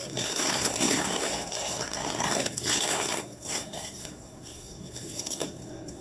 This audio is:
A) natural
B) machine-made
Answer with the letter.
B